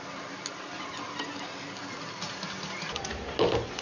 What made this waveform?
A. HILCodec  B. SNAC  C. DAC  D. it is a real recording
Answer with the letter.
D